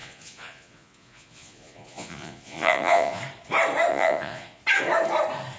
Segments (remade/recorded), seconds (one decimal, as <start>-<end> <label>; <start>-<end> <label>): 0.0-3.2 remade; 3.2-3.9 recorded; 3.9-4.6 remade; 4.6-5.6 recorded